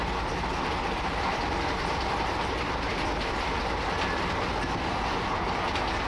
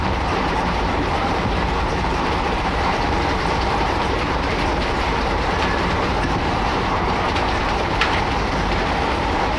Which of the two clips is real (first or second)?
first